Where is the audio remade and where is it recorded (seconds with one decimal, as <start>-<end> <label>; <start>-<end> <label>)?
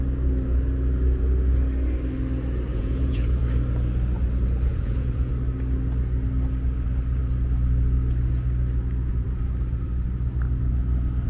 0.0-2.7 recorded; 2.7-3.4 remade; 3.4-4.7 recorded; 4.7-5.3 remade; 5.3-11.3 recorded